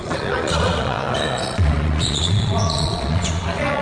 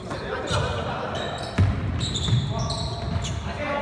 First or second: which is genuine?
second